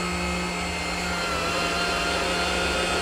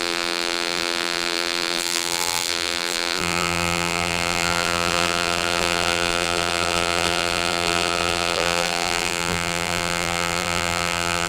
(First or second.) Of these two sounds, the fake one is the second